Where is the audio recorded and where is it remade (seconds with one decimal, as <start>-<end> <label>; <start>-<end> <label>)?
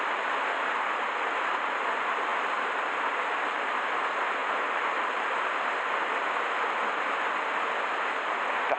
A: 0.0-8.8 recorded